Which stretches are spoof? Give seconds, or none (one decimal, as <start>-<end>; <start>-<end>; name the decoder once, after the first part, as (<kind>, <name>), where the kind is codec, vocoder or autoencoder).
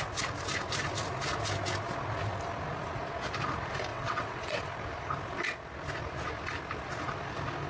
3.9-4.6 (vocoder, WaveNeXt)